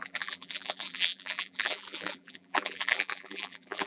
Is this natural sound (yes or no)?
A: no